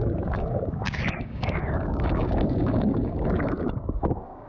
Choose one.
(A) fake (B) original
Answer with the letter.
A